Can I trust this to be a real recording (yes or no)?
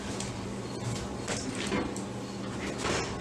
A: yes